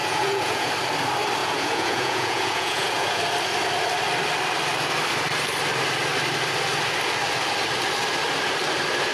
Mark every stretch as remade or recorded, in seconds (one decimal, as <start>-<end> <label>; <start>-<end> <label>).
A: 0.0-0.7 remade; 0.7-1.4 recorded; 1.4-3.2 remade; 3.2-9.1 recorded

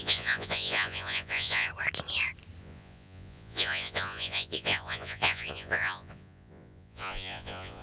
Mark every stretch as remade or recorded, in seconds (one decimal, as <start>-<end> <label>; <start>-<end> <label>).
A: 0.0-1.7 remade; 1.7-2.6 recorded; 2.6-7.8 remade

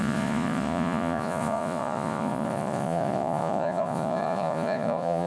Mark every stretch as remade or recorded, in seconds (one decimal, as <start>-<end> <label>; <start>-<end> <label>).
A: 0.0-5.3 remade